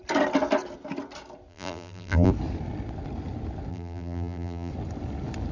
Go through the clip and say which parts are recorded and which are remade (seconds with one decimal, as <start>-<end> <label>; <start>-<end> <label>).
0.0-1.5 recorded; 1.5-2.3 remade; 2.3-3.7 recorded; 3.7-4.7 remade; 4.7-5.5 recorded